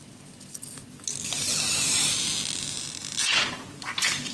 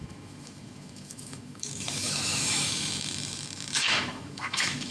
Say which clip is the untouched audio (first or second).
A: first